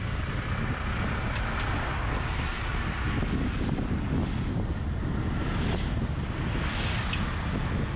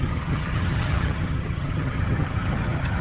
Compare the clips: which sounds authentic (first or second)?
first